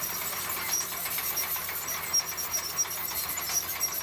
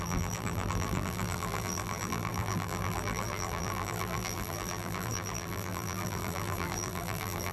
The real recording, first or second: first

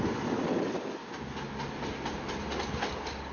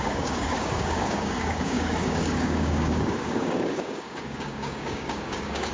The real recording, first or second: first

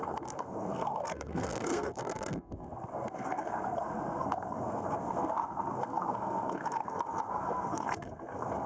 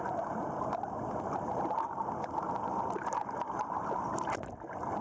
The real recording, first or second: second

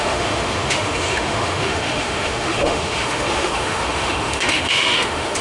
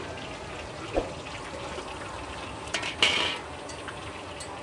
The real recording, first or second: second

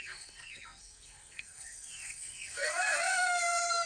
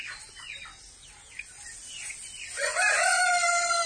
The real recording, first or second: second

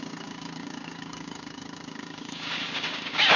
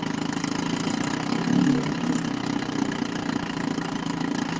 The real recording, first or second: second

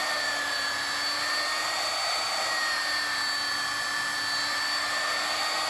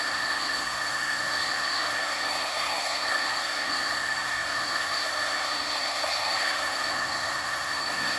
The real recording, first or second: first